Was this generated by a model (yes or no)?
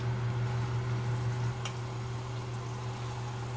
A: no